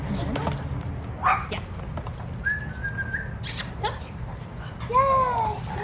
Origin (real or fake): real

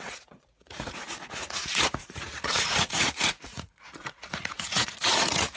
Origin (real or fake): fake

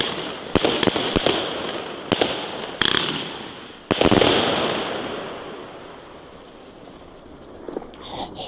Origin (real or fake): real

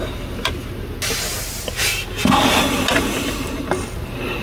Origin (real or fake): real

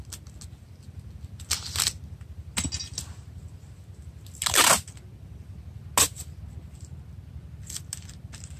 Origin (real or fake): real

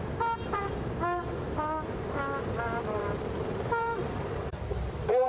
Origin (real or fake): fake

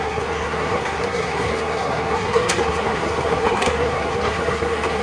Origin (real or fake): fake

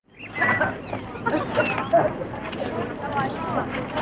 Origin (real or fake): real